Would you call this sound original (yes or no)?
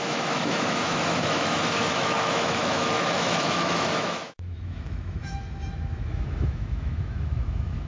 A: no